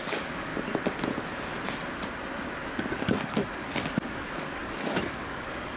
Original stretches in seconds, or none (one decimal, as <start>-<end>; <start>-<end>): 0.5-2.9